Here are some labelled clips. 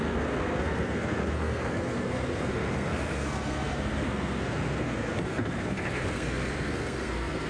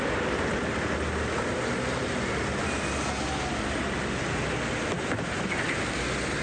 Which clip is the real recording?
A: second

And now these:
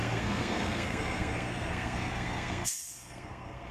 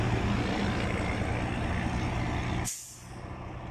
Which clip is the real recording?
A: second